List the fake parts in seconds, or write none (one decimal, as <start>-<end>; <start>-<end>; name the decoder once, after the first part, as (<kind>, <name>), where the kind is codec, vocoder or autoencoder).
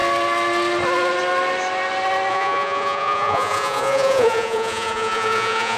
2.3-5.8 (vocoder, Vocos)